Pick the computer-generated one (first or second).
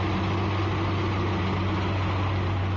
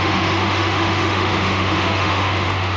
second